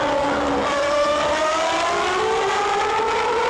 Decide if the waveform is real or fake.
real